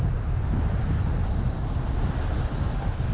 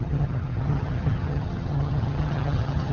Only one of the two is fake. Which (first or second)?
second